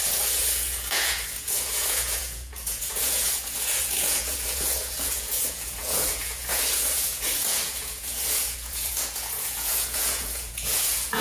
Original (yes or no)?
no